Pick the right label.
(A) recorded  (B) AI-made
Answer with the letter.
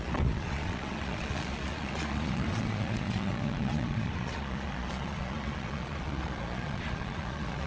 B